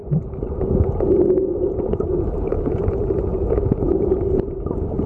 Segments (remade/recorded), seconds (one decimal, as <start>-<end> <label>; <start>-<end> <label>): 0.0-1.5 recorded; 1.5-3.3 remade; 3.3-4.4 recorded; 4.4-5.1 remade